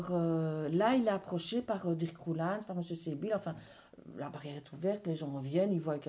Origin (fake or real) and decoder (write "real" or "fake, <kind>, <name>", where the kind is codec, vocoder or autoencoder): real